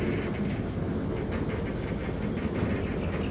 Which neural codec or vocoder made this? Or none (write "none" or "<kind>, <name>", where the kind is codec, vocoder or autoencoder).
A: none